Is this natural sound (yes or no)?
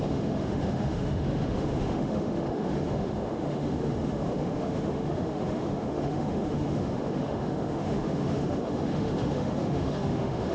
no